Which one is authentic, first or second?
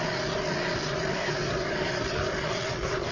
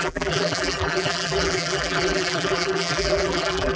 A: first